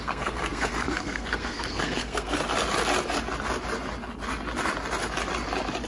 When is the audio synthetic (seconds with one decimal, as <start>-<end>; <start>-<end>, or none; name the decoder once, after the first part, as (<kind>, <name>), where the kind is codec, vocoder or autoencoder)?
0.0-2.4 (codec, SNAC)